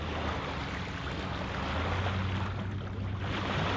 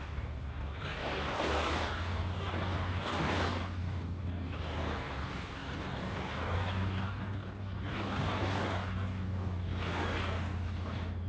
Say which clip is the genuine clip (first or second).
first